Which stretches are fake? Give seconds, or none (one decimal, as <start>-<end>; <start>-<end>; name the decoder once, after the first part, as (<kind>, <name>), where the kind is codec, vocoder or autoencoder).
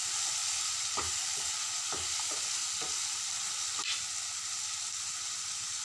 0.4-3.9 (vocoder, BigVGAN v2)